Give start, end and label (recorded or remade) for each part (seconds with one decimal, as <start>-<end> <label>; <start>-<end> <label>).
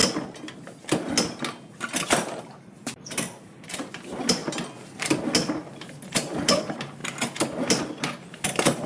0.0-2.4 recorded; 2.4-4.4 remade; 4.4-6.1 recorded; 6.1-7.0 remade; 7.0-7.8 recorded; 7.8-8.9 remade